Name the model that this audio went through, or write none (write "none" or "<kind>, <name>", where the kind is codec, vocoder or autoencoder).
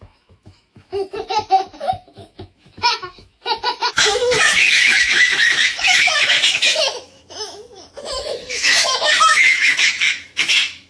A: autoencoder, DAC-VAE